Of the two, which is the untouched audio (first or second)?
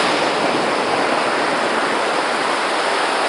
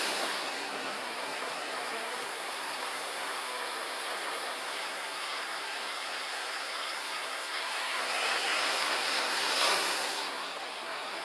first